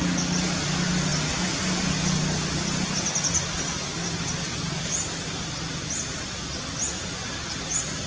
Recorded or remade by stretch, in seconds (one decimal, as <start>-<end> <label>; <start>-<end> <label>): 0.0-8.1 recorded